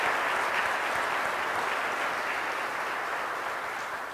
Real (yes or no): yes